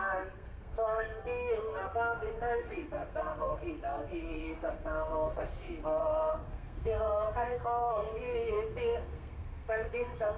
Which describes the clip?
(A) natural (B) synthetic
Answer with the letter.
B